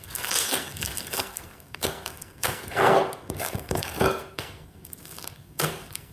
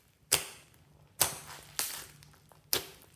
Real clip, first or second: second